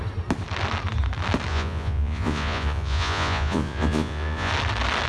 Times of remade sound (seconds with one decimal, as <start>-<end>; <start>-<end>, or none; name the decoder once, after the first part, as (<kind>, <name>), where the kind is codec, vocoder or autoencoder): 1.5-4.5 (vocoder, Vocos)